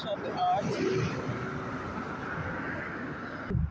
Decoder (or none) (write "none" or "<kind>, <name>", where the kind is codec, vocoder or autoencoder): none